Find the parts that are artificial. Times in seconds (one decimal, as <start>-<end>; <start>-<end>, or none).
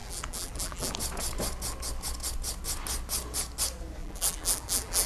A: 0.0-0.9; 4.0-5.1